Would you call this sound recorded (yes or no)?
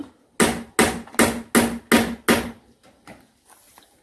yes